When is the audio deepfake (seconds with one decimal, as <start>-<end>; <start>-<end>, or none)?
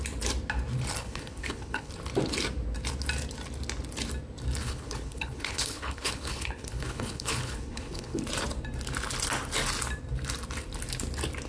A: 1.0-1.9; 4.6-8.2